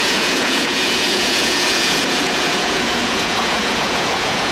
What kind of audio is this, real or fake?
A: fake